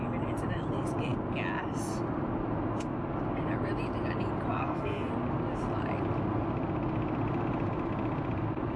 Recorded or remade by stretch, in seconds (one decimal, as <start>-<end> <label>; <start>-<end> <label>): 0.0-4.6 recorded; 4.6-5.1 remade; 5.1-8.8 recorded